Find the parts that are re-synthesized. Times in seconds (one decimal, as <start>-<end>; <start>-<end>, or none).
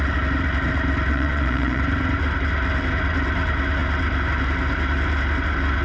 1.1-1.8